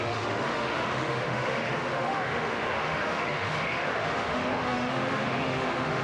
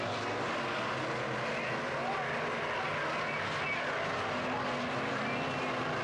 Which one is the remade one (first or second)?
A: first